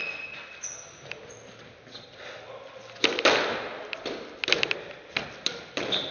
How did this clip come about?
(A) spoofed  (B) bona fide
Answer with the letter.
B